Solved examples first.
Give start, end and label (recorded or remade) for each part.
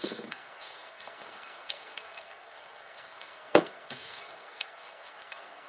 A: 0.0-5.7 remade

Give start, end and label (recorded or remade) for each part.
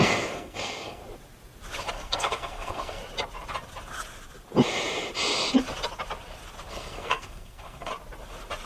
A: 0.0-1.0 remade; 1.0-1.9 recorded; 1.9-3.0 remade; 3.0-6.7 recorded; 6.7-7.9 remade; 7.9-8.7 recorded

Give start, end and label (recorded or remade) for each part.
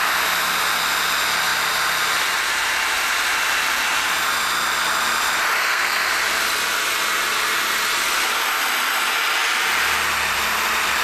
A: 0.0-5.6 recorded; 5.6-6.1 remade; 6.1-11.0 recorded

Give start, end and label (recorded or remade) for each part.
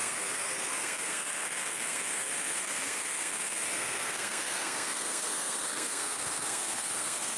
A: 0.0-7.4 remade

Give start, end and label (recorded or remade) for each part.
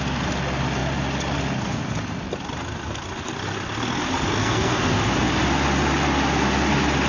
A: 0.0-4.4 recorded; 4.4-5.0 remade; 5.0-7.1 recorded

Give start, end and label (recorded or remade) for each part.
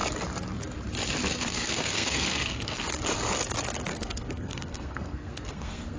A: 0.0-1.3 recorded; 1.3-2.9 remade; 2.9-3.9 recorded; 3.9-6.0 remade